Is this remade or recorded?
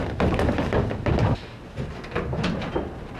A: recorded